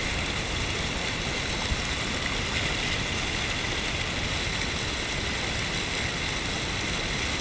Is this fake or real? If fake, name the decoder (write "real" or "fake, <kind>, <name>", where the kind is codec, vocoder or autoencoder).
real